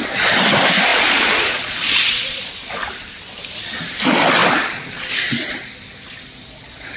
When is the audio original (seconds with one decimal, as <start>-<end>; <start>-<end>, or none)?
0.0-0.9; 2.5-7.0